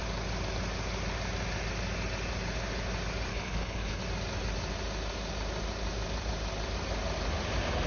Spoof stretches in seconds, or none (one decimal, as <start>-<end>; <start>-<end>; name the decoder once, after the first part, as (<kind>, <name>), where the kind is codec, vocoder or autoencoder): 3.3-4.0 (codec, HILCodec)